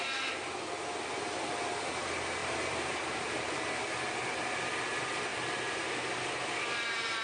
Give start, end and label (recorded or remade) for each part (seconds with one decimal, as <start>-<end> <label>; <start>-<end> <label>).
0.0-2.4 recorded; 2.4-3.6 remade; 3.6-5.3 recorded; 5.3-5.9 remade; 5.9-7.2 recorded